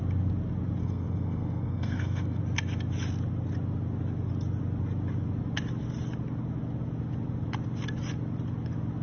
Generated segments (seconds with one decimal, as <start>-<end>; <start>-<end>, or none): 0.8-2.4